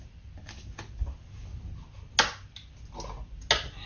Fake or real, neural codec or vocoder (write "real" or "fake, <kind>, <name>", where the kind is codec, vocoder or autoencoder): real